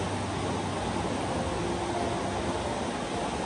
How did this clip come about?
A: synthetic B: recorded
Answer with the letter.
B